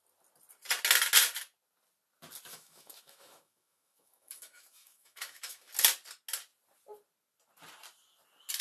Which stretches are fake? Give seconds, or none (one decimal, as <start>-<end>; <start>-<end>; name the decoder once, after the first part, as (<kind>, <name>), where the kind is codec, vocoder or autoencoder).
2.5-5.7 (autoencoder, DAC-VAE)